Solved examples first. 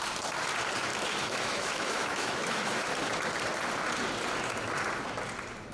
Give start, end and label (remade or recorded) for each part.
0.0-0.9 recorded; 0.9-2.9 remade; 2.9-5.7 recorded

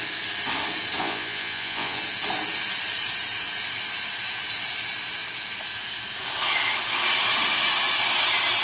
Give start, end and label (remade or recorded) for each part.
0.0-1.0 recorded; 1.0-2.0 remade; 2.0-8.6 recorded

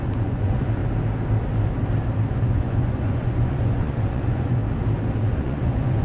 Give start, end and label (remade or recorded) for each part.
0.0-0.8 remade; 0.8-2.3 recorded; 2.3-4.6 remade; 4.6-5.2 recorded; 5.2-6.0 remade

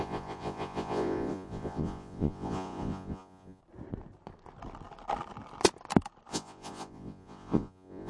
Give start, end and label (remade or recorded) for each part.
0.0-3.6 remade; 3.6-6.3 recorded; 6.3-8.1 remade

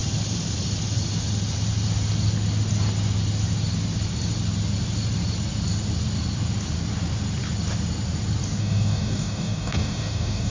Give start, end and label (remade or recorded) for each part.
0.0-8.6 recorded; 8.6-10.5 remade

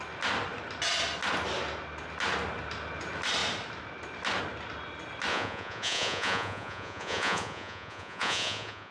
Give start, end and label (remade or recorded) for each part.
0.0-5.3 recorded; 5.3-8.9 remade

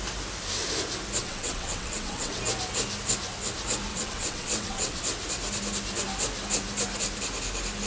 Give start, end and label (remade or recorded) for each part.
0.0-1.2 recorded; 1.2-2.4 remade; 2.4-3.9 recorded; 3.9-5.0 remade; 5.0-7.9 recorded